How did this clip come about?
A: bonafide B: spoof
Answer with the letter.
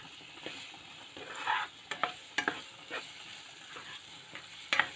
A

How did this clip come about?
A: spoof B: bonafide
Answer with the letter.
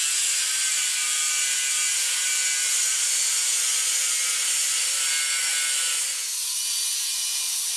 B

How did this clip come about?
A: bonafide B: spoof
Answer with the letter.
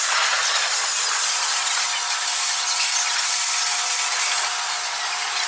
A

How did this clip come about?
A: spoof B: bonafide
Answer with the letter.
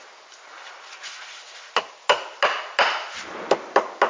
B